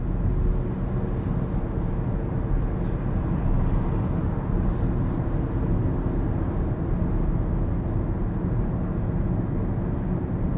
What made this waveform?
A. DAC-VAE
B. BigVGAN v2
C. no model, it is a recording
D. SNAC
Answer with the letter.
C